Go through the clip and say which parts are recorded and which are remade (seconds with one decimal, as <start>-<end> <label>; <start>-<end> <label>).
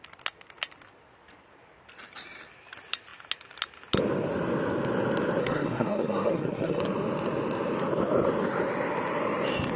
0.0-5.4 recorded; 5.4-6.8 remade; 6.8-9.8 recorded